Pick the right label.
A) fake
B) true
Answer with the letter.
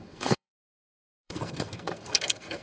A